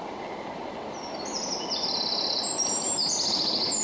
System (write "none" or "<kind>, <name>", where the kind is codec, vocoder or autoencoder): vocoder, BigVGAN v2